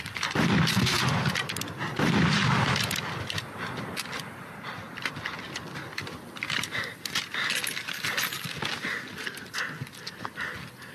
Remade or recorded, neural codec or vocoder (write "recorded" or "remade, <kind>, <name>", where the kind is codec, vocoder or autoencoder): recorded